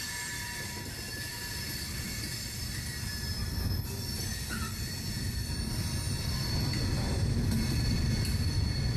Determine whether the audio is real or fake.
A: real